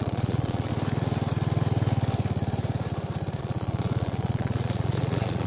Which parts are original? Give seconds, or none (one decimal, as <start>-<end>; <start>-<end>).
0.7-3.4